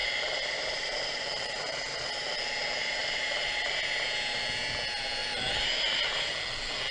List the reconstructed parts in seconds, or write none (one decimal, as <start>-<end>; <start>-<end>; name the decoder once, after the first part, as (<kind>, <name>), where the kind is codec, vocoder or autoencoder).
0.0-2.1 (vocoder, BigVGAN v2); 3.0-3.7; 5.2-6.3